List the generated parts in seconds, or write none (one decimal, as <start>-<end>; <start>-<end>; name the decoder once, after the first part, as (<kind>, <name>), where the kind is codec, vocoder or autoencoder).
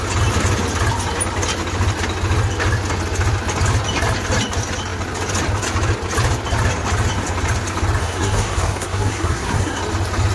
8.0-9.8 (codec, SNAC)